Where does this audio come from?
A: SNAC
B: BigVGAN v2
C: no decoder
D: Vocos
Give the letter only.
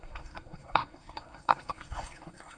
A